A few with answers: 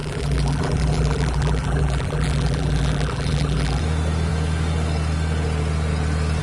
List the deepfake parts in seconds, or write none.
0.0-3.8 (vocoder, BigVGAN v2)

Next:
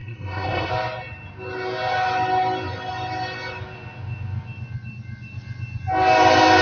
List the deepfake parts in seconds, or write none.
0.0-0.7 (codec, SNAC)

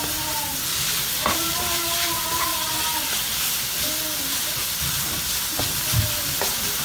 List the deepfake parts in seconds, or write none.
0.0-0.7 (vocoder, BigVGAN v2); 1.3-2.5

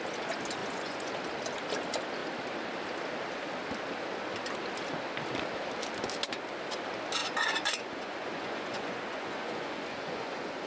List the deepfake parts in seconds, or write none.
0.6-1.1 (vocoder, Vocos); 7.2-10.7

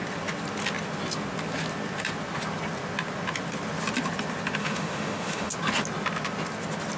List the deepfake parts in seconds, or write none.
4.6-5.5 (autoencoder, DAC-VAE)